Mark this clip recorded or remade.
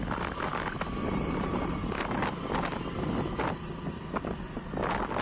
recorded